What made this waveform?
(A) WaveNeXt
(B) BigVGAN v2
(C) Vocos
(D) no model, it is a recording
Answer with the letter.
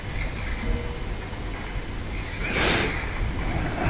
D